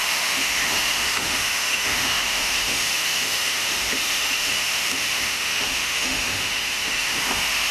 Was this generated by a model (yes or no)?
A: yes